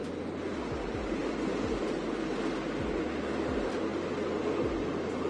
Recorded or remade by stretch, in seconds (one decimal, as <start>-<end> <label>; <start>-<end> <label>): 0.0-5.3 recorded

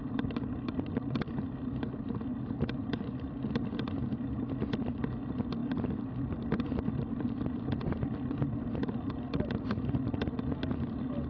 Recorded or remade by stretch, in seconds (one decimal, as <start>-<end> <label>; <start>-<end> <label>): 0.0-5.0 remade; 5.0-5.6 recorded; 5.6-9.8 remade; 9.8-11.3 recorded

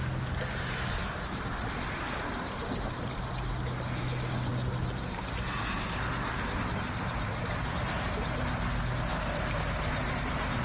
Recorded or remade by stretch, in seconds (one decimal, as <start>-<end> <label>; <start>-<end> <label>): 0.0-10.6 recorded

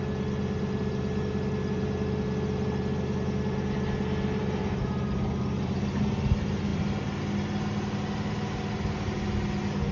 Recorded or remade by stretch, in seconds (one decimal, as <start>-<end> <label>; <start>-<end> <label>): 0.0-9.9 recorded

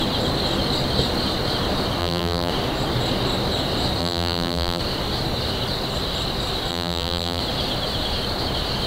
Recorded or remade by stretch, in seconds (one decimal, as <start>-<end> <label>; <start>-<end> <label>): 0.0-2.0 recorded; 2.0-2.5 remade; 2.5-4.0 recorded; 4.0-4.8 remade; 4.8-6.7 recorded; 6.7-7.4 remade; 7.4-8.9 recorded

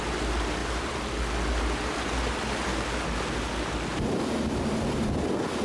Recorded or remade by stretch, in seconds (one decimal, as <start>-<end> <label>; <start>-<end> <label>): 0.0-5.6 recorded

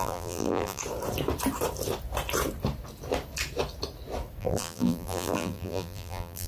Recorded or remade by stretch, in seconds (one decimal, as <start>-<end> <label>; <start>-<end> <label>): 0.0-0.8 remade; 0.8-4.4 recorded; 4.4-6.5 remade

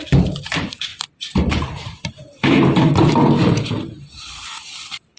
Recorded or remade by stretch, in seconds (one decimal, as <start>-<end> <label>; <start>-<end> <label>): 0.0-5.2 remade